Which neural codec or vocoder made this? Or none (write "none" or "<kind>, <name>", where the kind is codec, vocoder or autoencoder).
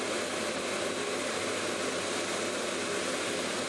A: none